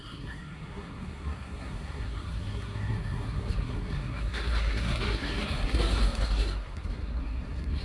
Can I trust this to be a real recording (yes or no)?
no